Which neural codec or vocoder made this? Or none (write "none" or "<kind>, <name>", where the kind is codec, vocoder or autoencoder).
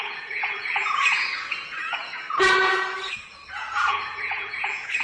vocoder, Vocos